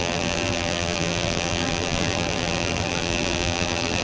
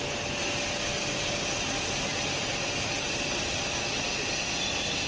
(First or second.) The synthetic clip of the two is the first